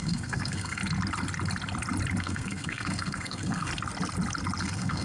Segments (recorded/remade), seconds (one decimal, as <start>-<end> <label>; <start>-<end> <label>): 0.0-0.8 remade; 0.8-2.2 recorded; 2.2-3.7 remade; 3.7-4.6 recorded; 4.6-5.0 remade

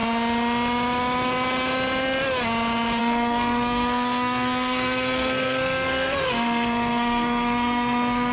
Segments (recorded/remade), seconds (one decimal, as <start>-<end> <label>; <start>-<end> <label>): 0.0-3.0 recorded; 3.0-8.3 remade

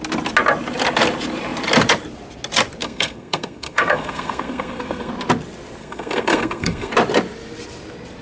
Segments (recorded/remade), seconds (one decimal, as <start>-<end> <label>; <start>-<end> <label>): 0.0-2.8 recorded; 2.8-5.1 remade; 5.1-5.8 recorded; 5.8-6.9 remade; 6.9-8.2 recorded

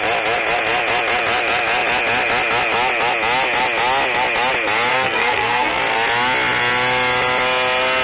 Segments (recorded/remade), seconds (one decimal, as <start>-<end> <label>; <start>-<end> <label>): 0.0-4.9 recorded; 4.9-5.8 remade; 5.8-8.0 recorded

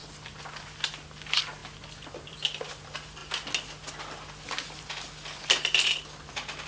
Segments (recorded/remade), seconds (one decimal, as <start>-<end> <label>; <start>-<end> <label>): 0.0-6.7 recorded

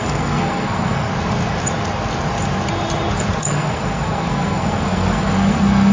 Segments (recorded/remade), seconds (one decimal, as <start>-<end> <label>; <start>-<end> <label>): 0.0-1.1 remade; 1.1-3.4 recorded; 3.4-5.9 remade

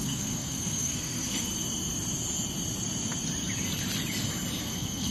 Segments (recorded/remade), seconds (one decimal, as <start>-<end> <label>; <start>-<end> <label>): 0.0-1.5 remade; 1.5-4.6 recorded; 4.6-5.1 remade